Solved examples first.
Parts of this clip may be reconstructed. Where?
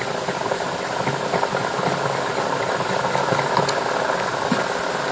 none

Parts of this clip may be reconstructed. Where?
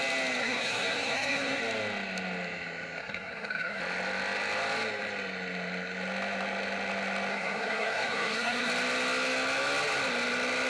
0.4-1.6 (codec, SNAC); 3.0-3.8; 7.3-8.7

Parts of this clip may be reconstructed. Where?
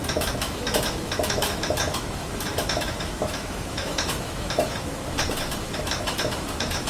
0.0-6.9 (autoencoder, DAC-VAE)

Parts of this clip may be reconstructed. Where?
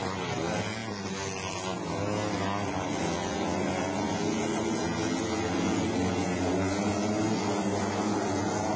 none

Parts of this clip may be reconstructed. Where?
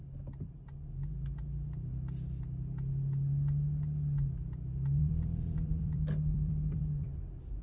5.0-7.6 (vocoder, BigVGAN v2)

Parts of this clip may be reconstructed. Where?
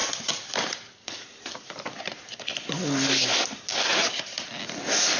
0.0-2.2 (vocoder, BigVGAN v2); 3.9-4.8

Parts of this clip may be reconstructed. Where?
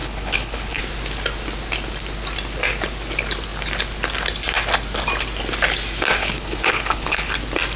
0.0-0.8 (codec, HILCodec); 6.2-7.3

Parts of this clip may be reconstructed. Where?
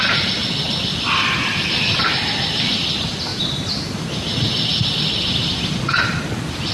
none